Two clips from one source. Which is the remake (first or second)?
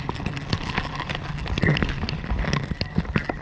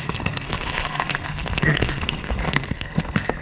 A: second